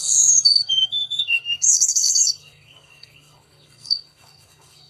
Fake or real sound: fake